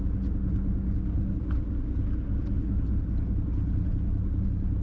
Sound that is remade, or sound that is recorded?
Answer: recorded